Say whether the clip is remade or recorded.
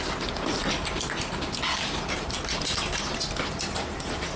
recorded